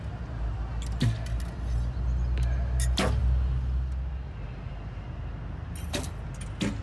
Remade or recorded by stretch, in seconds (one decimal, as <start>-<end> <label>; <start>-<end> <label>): 0.0-6.8 recorded